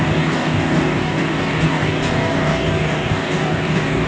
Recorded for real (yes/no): no